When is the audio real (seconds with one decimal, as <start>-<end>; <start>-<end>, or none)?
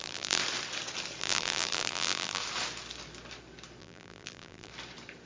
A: 0.4-1.2; 2.4-3.8; 4.7-5.3